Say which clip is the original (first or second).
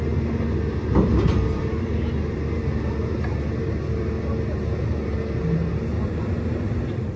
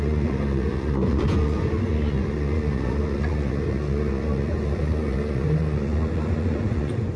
first